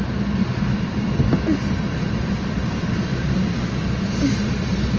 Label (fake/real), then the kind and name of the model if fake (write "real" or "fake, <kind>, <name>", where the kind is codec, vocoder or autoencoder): real